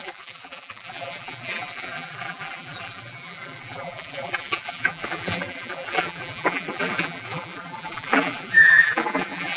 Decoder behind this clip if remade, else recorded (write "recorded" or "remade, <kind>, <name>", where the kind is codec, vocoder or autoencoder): remade, vocoder, BigVGAN v2